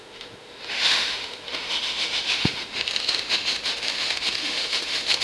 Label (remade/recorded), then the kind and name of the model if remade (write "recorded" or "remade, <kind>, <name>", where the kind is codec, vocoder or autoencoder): remade, autoencoder, DAC-VAE